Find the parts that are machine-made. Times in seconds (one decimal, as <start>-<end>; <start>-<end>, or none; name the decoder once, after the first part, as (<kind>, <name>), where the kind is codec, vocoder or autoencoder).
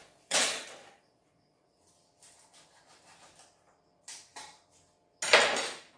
0.0-1.8 (vocoder, Vocos)